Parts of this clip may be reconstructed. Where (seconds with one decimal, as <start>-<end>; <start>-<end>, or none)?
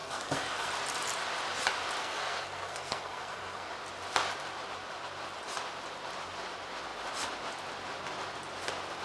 0.0-0.7; 2.0-3.7